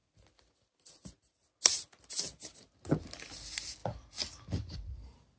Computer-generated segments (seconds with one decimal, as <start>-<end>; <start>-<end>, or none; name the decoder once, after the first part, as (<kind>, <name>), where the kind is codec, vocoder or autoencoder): none